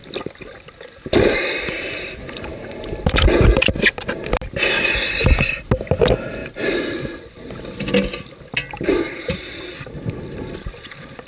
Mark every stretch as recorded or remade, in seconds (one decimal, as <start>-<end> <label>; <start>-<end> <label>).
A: 0.0-11.3 recorded